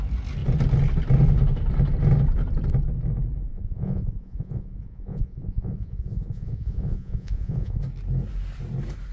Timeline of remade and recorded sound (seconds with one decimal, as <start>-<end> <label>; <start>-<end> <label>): 0.0-3.5 recorded; 3.5-7.8 remade; 7.8-9.1 recorded